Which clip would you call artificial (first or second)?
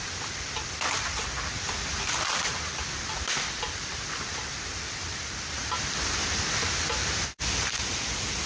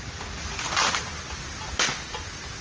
first